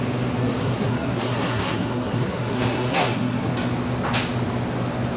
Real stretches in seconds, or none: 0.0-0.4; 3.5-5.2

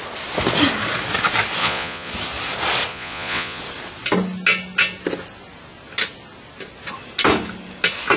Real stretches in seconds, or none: 0.0-1.6; 2.1-2.9; 3.6-8.2

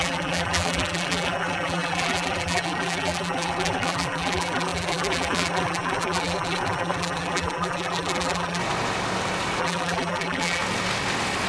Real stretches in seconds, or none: 8.6-9.6; 10.6-11.5

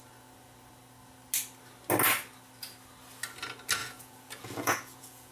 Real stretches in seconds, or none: 0.0-3.8

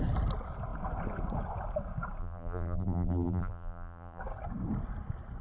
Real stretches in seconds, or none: 0.0-2.2; 4.2-5.4